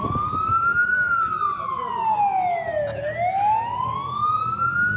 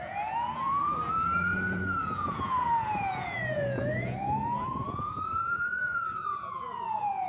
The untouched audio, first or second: first